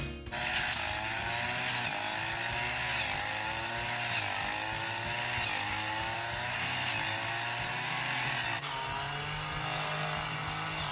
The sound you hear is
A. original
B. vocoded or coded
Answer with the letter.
A